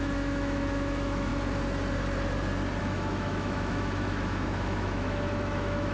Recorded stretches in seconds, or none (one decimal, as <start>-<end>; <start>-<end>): 1.3-2.8